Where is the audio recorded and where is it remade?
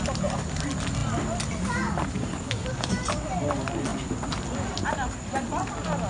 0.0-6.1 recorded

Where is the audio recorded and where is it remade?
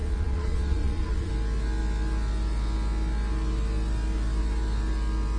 0.0-1.3 remade; 1.3-5.4 recorded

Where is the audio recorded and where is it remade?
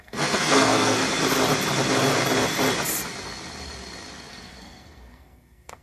0.0-1.0 remade; 1.0-4.3 recorded; 4.3-5.8 remade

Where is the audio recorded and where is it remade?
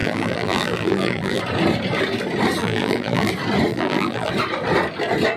0.0-1.4 remade; 1.4-2.6 recorded; 2.6-3.3 remade; 3.3-3.7 recorded; 3.7-4.3 remade; 4.3-5.4 recorded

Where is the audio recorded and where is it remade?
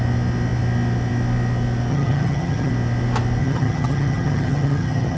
0.0-1.9 recorded; 1.9-2.7 remade; 2.7-3.4 recorded; 3.4-5.2 remade